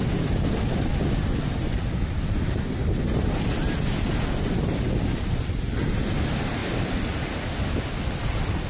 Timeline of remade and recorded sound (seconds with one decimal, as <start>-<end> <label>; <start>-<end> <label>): 0.0-8.7 recorded

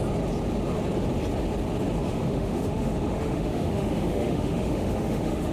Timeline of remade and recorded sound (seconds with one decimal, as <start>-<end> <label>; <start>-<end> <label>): 0.0-2.1 recorded; 2.1-5.5 remade

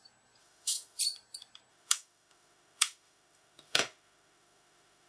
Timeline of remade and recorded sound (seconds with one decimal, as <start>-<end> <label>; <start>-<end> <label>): 0.0-0.4 recorded; 0.4-1.0 remade; 1.0-1.7 recorded; 1.7-5.1 remade

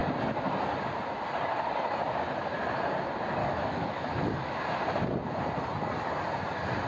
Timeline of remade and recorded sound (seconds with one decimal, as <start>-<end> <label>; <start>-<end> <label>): 0.0-3.4 recorded; 3.4-4.6 remade; 4.6-6.9 recorded

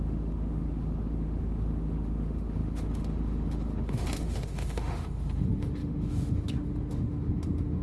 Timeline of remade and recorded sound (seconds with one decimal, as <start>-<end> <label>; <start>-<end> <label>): 0.0-7.8 remade

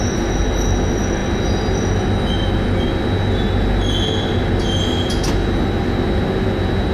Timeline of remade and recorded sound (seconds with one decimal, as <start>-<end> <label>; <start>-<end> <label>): 0.0-6.9 recorded